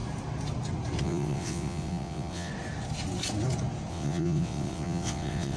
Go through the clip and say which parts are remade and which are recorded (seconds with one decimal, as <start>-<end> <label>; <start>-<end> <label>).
0.0-1.0 recorded; 1.0-2.5 remade; 2.5-3.9 recorded; 3.9-5.6 remade